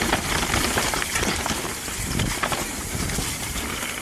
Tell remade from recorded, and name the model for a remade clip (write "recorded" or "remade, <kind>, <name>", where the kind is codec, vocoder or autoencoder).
recorded